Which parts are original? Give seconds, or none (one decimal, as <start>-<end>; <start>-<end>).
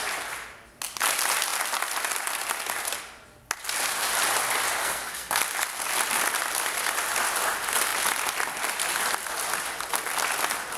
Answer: 0.0-4.8; 5.4-10.8